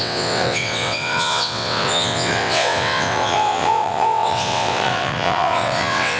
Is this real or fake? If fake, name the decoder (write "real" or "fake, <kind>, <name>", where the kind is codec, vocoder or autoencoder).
fake, vocoder, WaveNeXt